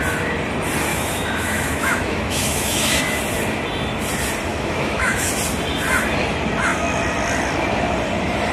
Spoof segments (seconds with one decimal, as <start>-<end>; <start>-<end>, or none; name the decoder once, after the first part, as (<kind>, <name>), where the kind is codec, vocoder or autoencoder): 0.9-3.0 (autoencoder, DAC-VAE); 4.5-5.3